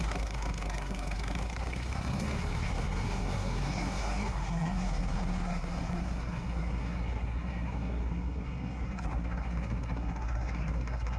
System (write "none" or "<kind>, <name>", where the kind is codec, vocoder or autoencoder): codec, SNAC